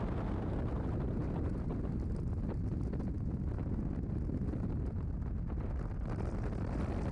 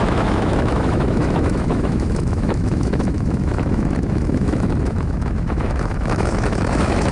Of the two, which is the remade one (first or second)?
second